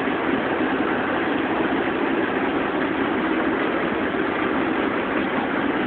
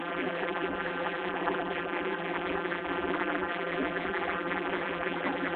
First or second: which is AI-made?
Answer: second